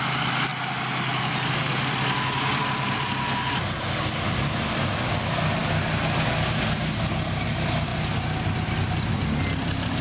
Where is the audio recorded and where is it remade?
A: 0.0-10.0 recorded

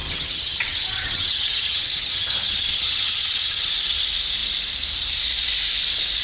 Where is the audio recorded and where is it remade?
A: 0.0-3.7 remade; 3.7-6.2 recorded